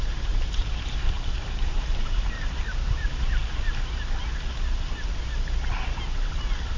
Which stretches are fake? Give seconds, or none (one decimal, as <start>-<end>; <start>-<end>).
0.0-3.4